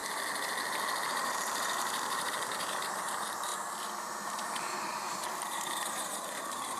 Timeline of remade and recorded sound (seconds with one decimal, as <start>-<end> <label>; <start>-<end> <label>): 0.0-1.1 recorded; 1.1-3.5 remade; 3.5-4.3 recorded; 4.3-6.8 remade